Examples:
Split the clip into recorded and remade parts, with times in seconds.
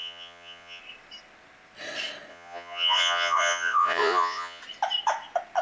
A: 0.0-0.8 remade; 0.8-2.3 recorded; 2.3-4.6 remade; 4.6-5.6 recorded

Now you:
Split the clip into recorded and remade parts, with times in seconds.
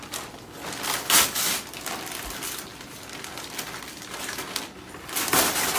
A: 0.0-5.8 recorded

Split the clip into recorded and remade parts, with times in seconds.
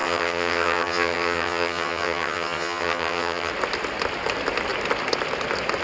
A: 0.0-3.5 remade; 3.5-5.8 recorded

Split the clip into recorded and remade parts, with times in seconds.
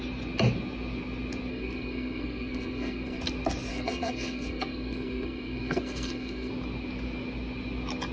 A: 0.0-1.5 recorded; 1.5-3.2 remade; 3.2-3.7 recorded; 3.7-6.5 remade; 6.5-8.1 recorded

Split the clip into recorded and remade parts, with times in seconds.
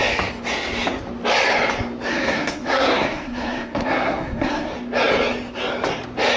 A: 0.0-2.1 recorded; 2.1-4.7 remade; 4.7-6.4 recorded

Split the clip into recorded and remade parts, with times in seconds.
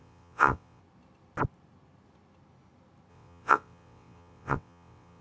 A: 0.0-0.8 remade; 0.8-3.1 recorded; 3.1-5.2 remade